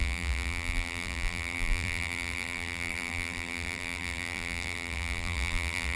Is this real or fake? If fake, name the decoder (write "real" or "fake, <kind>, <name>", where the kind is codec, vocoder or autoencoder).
fake, vocoder, BigVGAN v2